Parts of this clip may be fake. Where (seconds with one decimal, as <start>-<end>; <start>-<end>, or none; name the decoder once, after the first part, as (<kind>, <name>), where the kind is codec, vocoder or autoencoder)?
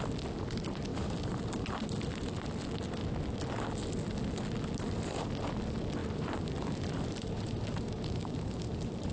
0.9-1.8 (vocoder, BigVGAN v2); 6.0-9.1